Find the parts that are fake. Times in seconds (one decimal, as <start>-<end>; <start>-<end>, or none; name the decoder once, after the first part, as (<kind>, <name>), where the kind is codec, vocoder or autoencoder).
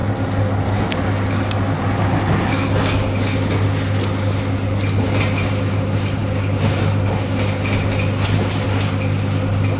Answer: none